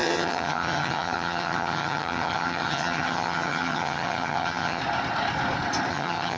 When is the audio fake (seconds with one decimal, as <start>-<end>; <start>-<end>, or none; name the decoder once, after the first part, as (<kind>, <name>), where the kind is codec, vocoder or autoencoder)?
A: 0.0-4.8 (vocoder, HiFi-GAN); 5.9-6.4